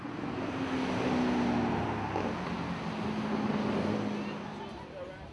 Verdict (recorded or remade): recorded